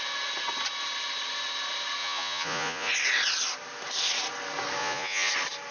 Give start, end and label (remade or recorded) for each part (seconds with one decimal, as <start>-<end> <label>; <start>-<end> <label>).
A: 0.0-2.0 recorded; 2.0-2.9 remade; 2.9-4.8 recorded; 4.8-5.3 remade; 5.3-5.7 recorded